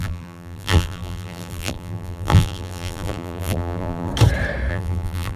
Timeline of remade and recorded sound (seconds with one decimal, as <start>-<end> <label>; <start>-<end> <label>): 0.0-4.1 remade; 4.1-4.7 recorded; 4.7-5.4 remade

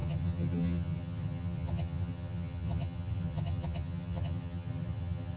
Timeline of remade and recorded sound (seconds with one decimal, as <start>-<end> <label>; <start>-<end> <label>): 0.0-5.4 remade

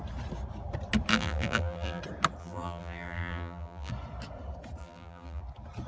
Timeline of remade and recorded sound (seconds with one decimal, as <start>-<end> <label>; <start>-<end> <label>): 0.0-1.1 recorded; 1.1-2.0 remade; 2.0-2.4 recorded; 2.4-3.9 remade; 3.9-4.8 recorded; 4.8-5.4 remade; 5.4-5.9 recorded

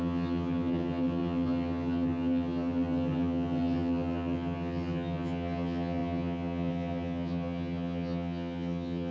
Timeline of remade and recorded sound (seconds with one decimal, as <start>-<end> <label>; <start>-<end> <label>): 0.0-9.1 remade